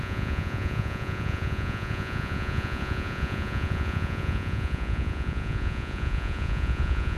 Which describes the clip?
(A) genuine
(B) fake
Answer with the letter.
B